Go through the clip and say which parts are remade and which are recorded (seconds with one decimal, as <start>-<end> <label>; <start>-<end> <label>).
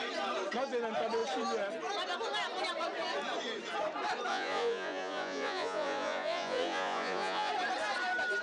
0.0-4.3 recorded; 4.3-7.5 remade; 7.5-8.4 recorded